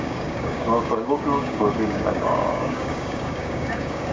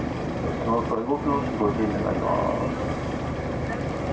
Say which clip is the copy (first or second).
first